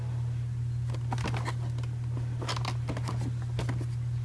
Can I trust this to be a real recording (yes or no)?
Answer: yes